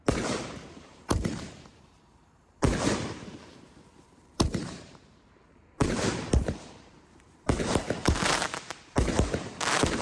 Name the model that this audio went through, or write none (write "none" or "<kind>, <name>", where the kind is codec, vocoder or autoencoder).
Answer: vocoder, BigVGAN v2